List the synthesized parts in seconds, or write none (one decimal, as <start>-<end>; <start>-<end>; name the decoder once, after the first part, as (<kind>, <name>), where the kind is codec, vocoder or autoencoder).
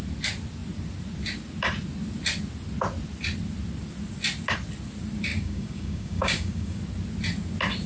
5.3-6.8 (codec, DAC)